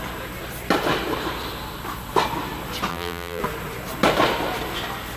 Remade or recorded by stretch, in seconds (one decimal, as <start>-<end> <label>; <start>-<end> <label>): 0.0-2.9 recorded; 2.9-3.4 remade; 3.4-5.2 recorded